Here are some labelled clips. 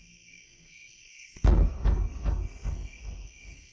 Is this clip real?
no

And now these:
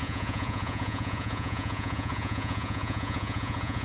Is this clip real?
no